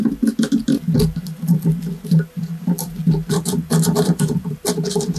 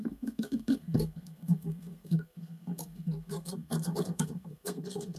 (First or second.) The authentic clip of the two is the first